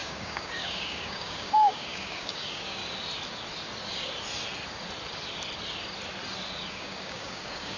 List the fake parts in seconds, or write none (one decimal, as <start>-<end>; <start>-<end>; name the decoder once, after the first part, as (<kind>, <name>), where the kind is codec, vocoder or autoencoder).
0.0-2.8 (codec, DAC); 6.7-7.8